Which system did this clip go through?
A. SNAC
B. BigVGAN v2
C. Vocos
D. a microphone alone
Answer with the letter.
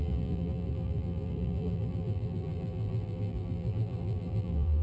B